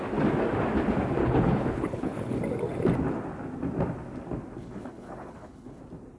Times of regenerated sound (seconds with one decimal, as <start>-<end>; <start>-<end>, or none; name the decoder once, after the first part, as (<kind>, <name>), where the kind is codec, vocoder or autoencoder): 1.2-2.4 (codec, HILCodec); 4.6-5.8

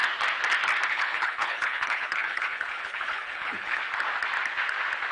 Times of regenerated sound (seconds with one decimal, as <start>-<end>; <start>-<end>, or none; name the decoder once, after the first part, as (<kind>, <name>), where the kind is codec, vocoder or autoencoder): 0.9-3.8 (codec, HILCodec)

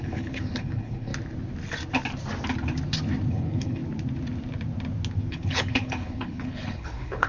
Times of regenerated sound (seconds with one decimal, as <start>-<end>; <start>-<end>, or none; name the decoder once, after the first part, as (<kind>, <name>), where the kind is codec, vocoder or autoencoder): 0.0-1.1 (codec, HILCodec); 3.3-3.8; 5.3-7.3

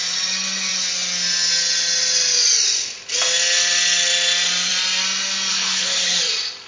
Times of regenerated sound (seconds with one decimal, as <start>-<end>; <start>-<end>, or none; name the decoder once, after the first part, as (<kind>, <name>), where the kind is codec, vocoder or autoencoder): 5.5-6.2 (codec, HILCodec)

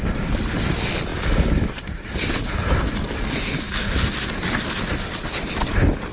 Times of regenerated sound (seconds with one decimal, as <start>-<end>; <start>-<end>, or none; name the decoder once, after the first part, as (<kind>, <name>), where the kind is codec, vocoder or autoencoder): none

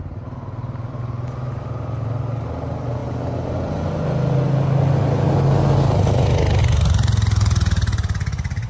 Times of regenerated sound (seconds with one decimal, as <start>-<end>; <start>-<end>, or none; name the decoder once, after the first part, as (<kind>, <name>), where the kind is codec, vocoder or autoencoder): none